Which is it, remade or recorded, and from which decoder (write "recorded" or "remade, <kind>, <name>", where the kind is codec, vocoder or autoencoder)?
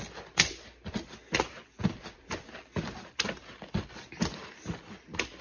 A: recorded